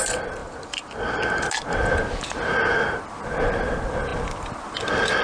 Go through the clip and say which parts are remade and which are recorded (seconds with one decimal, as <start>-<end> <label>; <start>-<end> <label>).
0.0-5.2 recorded